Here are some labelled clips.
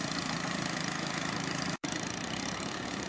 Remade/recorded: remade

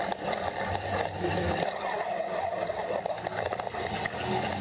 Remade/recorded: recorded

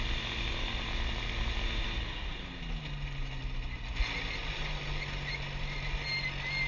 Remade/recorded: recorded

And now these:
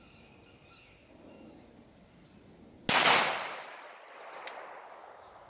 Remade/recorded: recorded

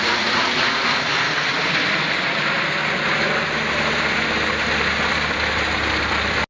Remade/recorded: recorded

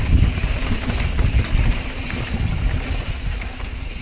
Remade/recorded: recorded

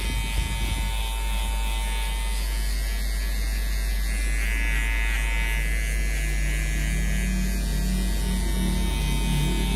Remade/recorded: recorded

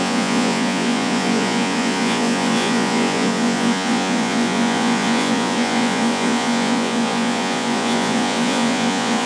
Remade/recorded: remade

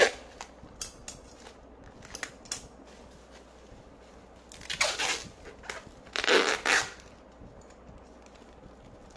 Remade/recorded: recorded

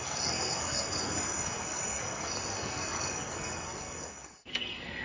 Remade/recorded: remade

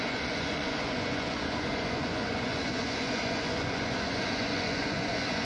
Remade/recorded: remade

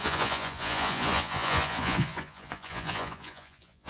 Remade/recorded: remade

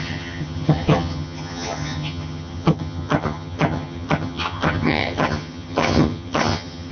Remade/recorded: remade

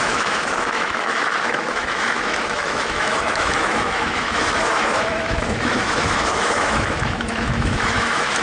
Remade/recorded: remade